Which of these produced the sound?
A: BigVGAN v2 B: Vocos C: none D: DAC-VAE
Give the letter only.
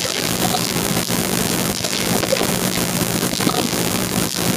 A